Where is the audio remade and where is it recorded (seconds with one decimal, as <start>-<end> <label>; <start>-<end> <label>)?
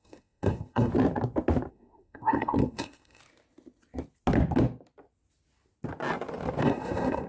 0.0-0.9 remade; 0.9-1.7 recorded; 1.7-3.2 remade; 3.2-6.6 recorded; 6.6-7.3 remade